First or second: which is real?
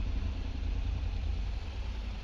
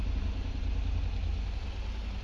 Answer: second